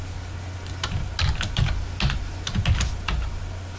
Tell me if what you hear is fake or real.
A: real